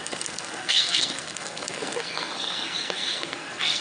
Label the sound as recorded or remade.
remade